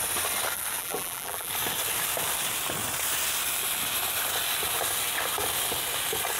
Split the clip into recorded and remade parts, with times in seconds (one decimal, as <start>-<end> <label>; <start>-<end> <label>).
0.0-0.8 recorded; 0.8-1.5 remade; 1.5-6.4 recorded